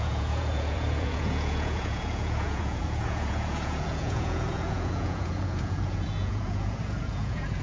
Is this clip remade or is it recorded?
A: remade